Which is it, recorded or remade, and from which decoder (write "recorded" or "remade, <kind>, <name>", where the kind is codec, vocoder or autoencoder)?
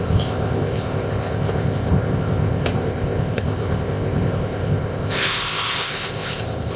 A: remade, codec, ZipCodec